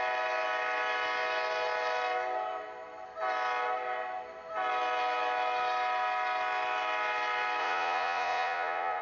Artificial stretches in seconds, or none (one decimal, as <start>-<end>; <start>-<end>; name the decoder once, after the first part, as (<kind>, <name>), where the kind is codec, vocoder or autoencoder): 7.6-9.0 (vocoder, Vocos)